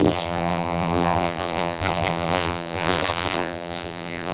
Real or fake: fake